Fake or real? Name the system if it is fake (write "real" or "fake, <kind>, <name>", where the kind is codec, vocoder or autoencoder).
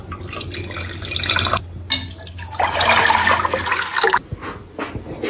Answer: real